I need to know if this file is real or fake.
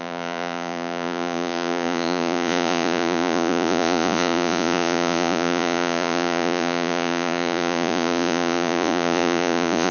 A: fake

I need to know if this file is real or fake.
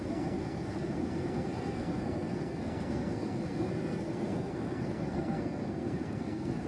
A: fake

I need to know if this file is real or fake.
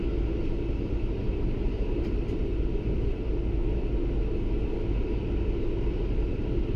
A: real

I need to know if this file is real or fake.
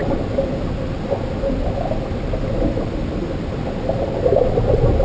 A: real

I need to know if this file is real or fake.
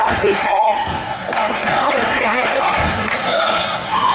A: fake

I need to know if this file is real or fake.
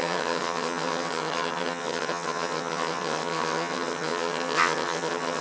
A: fake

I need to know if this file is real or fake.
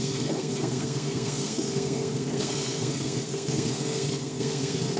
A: fake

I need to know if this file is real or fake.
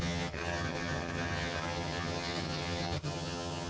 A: fake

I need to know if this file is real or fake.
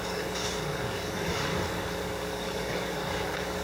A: fake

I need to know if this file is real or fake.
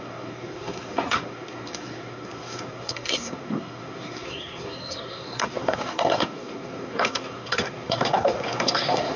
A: fake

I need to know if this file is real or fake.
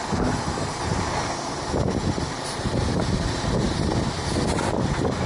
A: real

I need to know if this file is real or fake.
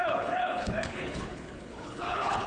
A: fake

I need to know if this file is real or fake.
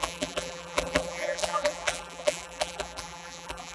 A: fake